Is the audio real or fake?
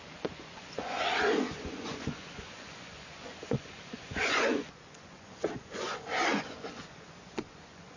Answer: fake